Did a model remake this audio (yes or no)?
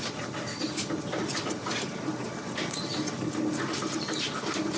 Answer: no